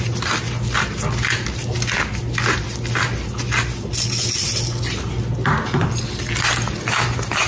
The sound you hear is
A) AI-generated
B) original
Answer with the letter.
B